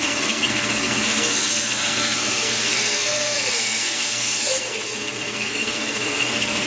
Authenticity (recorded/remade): remade